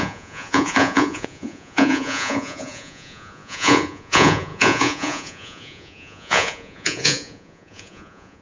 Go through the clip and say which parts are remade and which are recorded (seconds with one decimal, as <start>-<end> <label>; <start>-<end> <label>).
0.0-8.4 remade